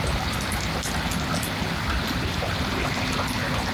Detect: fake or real real